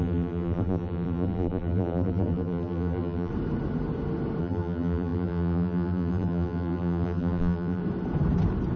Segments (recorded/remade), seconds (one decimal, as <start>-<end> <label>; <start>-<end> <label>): 0.0-3.3 remade; 3.3-4.4 recorded; 4.4-7.8 remade; 7.8-8.8 recorded